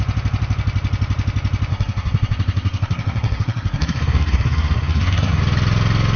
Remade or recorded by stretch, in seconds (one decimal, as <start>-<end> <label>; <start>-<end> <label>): 0.0-1.7 recorded; 1.7-5.4 remade; 5.4-6.2 recorded